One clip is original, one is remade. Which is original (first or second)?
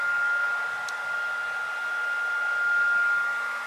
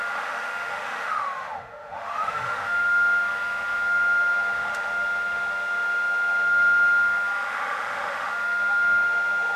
first